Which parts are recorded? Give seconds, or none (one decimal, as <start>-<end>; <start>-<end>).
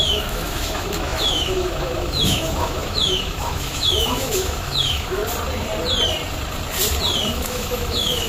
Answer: 5.2-7.3